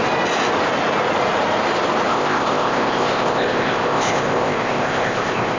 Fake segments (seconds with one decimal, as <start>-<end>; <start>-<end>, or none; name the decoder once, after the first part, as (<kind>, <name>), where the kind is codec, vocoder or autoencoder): 2.1-5.6 (codec, ZipCodec)

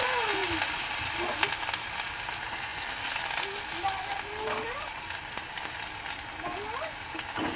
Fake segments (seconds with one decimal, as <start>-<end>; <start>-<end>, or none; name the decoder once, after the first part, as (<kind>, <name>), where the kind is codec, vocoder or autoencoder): none

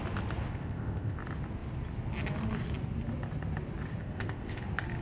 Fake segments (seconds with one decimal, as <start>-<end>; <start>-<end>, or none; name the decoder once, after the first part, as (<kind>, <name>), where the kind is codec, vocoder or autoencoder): 0.5-1.2 (codec, ZipCodec); 4.0-4.6

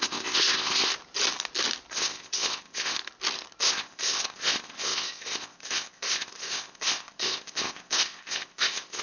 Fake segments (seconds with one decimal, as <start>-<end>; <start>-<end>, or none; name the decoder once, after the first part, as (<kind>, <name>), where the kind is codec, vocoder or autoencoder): 0.0-0.9 (codec, ZipCodec); 1.9-3.0; 3.6-9.0

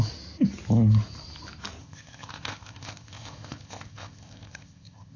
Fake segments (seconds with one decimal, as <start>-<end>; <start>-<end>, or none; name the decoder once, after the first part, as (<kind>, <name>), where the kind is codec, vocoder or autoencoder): 1.8-5.2 (codec, ZipCodec)

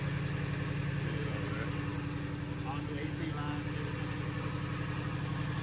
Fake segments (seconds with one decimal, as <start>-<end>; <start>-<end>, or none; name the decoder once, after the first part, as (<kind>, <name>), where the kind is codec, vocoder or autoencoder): none

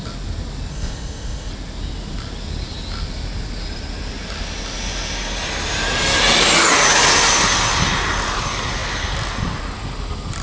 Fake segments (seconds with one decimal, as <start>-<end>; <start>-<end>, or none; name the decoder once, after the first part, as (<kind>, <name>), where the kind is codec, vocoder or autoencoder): 0.7-1.5 (codec, ZipCodec)